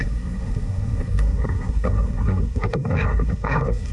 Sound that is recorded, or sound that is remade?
remade